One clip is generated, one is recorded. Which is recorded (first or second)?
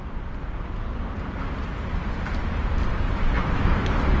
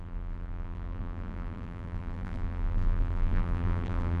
first